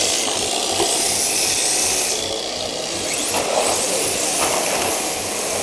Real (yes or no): yes